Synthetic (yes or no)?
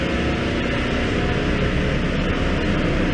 no